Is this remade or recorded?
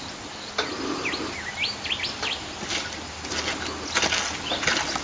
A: recorded